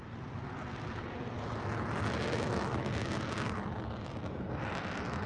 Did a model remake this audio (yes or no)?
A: no